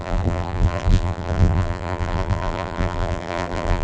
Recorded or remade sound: remade